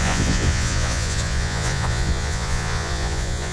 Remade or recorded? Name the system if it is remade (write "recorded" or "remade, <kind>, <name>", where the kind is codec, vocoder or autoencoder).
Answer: remade, vocoder, Vocos